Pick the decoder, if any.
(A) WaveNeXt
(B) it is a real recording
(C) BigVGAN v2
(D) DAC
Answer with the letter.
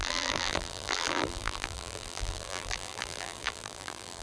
C